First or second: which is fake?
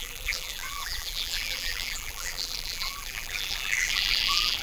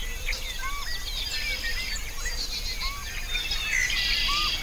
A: first